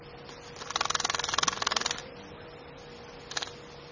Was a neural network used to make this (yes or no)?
no